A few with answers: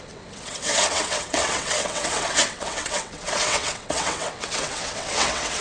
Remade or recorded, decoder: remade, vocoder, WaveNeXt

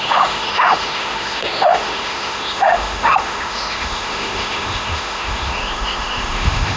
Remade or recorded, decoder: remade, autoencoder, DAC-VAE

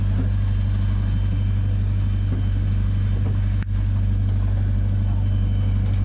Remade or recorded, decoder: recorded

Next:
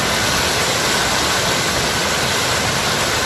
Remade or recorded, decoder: recorded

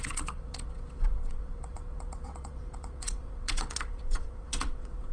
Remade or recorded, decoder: remade, vocoder, WaveNeXt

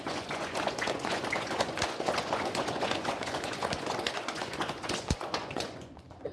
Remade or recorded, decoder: remade, vocoder, Vocos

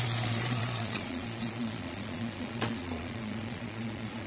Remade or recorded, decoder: remade, vocoder, Vocos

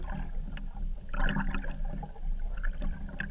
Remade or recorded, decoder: recorded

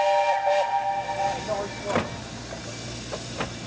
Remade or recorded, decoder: recorded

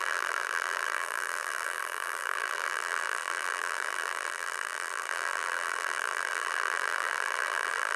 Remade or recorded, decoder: remade, vocoder, BigVGAN v2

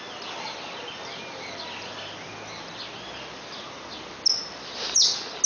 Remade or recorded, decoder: recorded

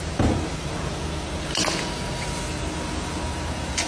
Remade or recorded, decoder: recorded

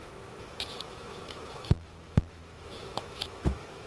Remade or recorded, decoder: remade, autoencoder, DAC-VAE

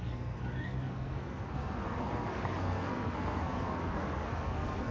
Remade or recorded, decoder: remade, codec, SNAC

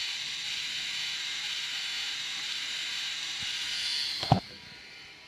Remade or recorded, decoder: recorded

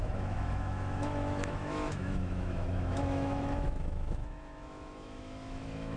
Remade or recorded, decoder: remade, autoencoder, DAC-VAE